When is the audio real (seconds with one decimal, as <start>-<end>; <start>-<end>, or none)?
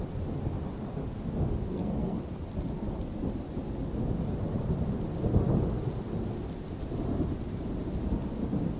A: 0.0-1.7; 2.2-8.8